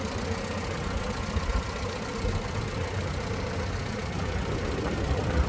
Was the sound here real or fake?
real